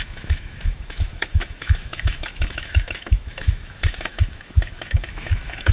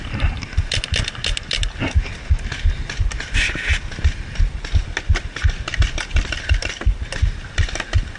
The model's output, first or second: first